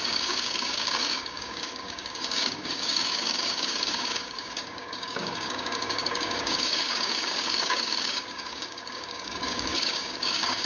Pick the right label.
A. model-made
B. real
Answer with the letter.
A